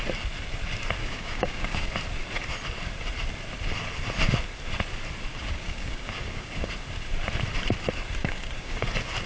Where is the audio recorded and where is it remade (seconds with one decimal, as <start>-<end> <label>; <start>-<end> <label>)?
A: 0.0-1.0 recorded; 1.0-1.9 remade; 1.9-5.3 recorded; 5.3-6.7 remade; 6.7-8.2 recorded; 8.2-8.9 remade; 8.9-9.3 recorded